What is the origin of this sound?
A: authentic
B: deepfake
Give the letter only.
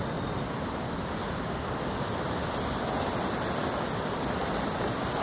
A